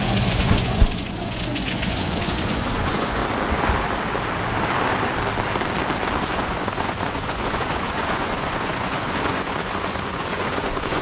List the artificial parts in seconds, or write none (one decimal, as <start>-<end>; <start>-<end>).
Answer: 0.0-3.2; 6.2-11.0